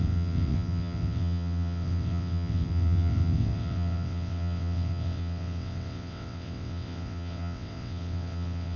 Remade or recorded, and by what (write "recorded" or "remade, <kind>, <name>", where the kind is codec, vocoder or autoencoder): remade, vocoder, WaveNeXt